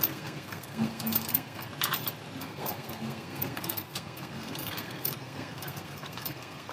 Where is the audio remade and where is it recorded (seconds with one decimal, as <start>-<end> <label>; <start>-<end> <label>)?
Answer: 0.0-1.7 remade; 1.7-2.4 recorded; 2.4-6.7 remade